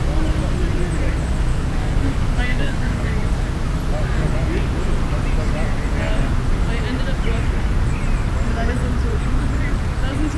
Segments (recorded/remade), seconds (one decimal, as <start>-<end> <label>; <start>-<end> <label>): 0.0-1.5 recorded; 1.5-2.1 remade; 2.1-2.5 recorded; 2.5-3.1 remade; 3.1-10.4 recorded